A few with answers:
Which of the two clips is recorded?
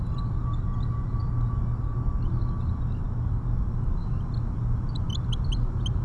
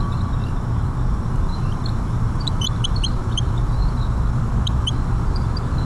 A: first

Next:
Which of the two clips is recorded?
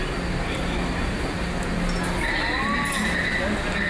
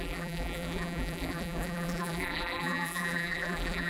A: first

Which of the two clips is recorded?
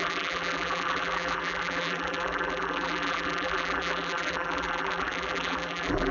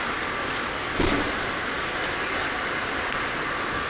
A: second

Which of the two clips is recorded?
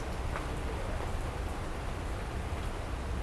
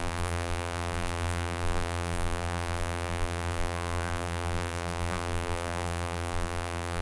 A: first